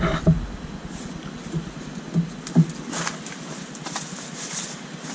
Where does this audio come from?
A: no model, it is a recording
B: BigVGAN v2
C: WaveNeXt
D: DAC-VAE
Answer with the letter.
A